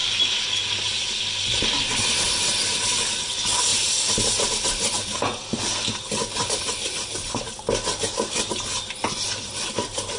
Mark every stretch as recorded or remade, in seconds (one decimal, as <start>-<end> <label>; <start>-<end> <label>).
0.0-1.4 recorded; 1.4-10.2 remade